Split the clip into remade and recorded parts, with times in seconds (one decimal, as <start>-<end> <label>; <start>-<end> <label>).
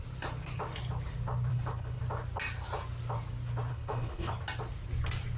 0.0-1.5 recorded; 1.5-2.0 remade; 2.0-3.7 recorded; 3.7-4.3 remade; 4.3-5.4 recorded